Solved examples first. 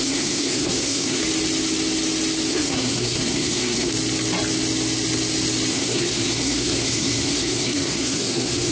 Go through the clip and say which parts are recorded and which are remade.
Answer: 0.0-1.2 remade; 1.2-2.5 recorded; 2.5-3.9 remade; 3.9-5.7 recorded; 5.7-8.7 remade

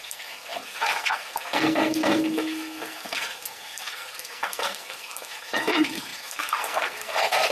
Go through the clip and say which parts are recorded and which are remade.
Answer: 0.0-7.5 remade

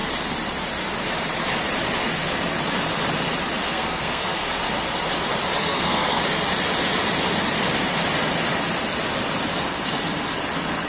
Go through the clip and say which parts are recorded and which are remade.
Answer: 0.0-3.7 recorded; 3.7-4.6 remade; 4.6-5.6 recorded; 5.6-6.2 remade; 6.2-10.9 recorded